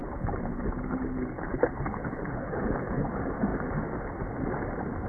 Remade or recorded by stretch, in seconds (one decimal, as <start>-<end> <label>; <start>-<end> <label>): 0.0-3.1 remade; 3.1-5.1 recorded